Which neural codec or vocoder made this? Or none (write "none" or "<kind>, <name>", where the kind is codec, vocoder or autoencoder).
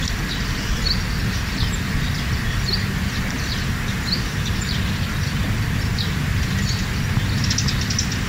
none